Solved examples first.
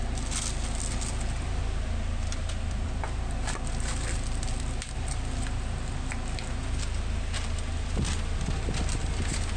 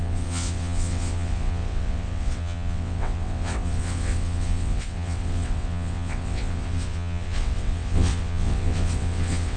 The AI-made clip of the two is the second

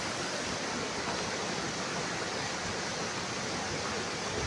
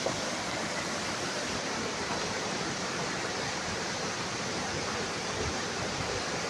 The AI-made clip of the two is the second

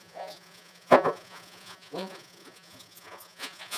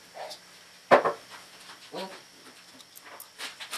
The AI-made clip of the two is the first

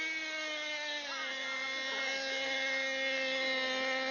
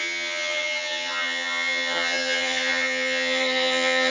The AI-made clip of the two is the second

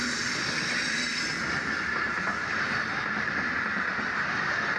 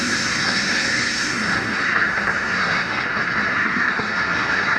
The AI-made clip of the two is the second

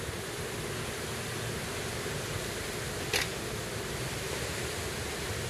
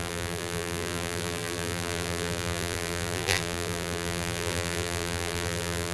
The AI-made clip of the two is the second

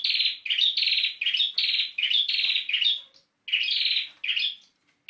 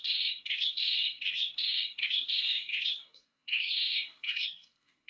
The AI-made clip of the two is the second